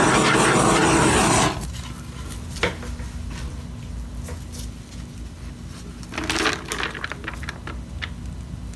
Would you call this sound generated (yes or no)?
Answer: no